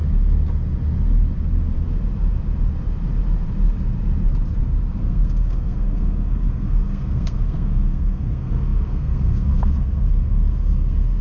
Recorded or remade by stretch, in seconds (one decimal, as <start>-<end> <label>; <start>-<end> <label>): 0.0-5.0 recorded; 5.0-11.2 remade